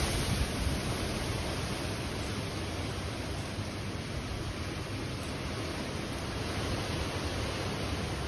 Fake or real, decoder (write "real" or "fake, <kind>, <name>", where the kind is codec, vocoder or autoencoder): real